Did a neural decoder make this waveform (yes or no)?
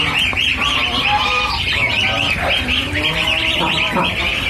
yes